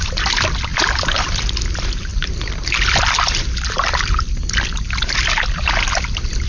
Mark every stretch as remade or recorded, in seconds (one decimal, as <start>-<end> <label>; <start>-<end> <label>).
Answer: 0.0-6.5 recorded